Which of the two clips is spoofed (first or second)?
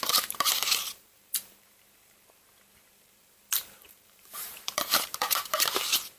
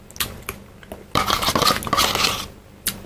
first